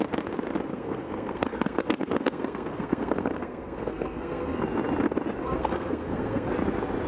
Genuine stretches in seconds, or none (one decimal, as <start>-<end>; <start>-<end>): 0.0-0.7; 4.6-5.4; 6.5-7.1